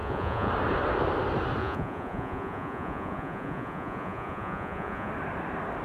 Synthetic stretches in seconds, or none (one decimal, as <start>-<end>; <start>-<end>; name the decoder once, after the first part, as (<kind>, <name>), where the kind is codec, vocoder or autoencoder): 0.0-0.5 (vocoder, Vocos); 1.6-5.1